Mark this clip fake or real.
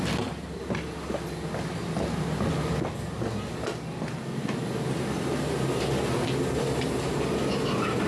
real